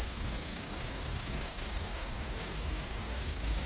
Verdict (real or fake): fake